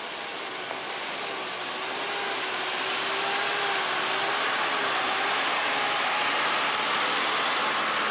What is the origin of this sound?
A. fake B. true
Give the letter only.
B